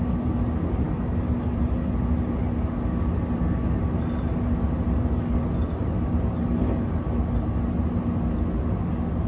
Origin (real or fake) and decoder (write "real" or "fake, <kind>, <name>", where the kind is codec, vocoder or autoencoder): real